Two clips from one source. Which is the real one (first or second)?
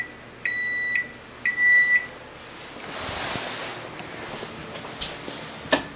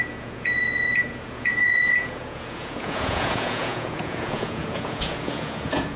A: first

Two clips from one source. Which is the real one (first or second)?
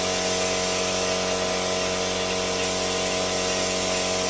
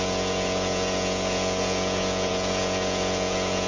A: first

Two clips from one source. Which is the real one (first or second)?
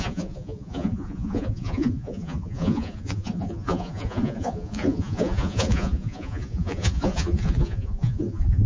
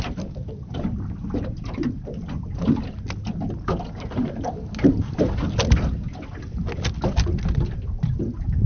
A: second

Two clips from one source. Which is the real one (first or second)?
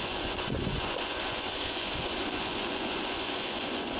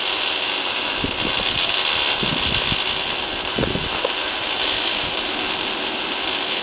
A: second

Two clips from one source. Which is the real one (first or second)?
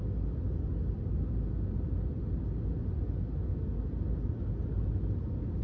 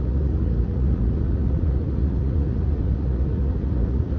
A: first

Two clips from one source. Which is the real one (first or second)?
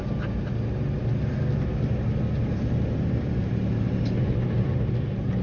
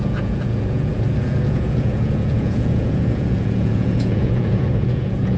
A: first